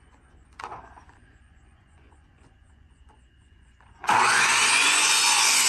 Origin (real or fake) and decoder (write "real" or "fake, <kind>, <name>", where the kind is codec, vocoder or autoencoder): fake, vocoder, Vocos